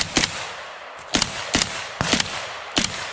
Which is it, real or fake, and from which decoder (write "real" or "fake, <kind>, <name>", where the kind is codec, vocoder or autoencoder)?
real